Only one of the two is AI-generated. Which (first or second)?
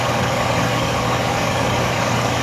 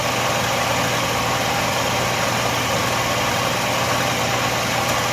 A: first